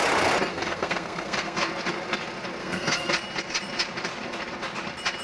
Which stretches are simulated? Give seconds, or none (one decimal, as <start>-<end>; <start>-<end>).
0.5-1.6; 2.6-3.1